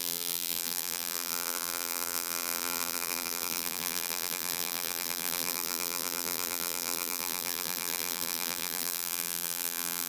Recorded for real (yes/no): no